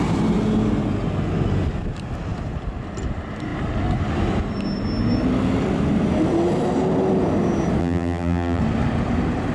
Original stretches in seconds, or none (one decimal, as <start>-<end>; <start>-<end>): 0.0-7.8; 8.6-9.5